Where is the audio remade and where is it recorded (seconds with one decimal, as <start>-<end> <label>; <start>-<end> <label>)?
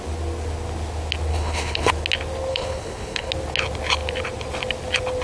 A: 0.0-1.3 recorded; 1.3-1.9 remade; 1.9-2.5 recorded; 2.5-3.3 remade; 3.3-5.2 recorded